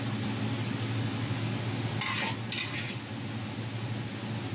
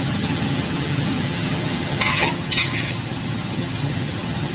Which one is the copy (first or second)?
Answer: second